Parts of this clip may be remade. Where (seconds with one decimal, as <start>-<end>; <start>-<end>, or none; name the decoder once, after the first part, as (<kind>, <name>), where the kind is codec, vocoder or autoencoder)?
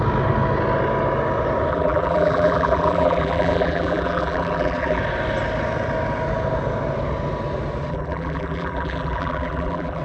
1.7-5.0 (vocoder, BigVGAN v2); 7.9-10.0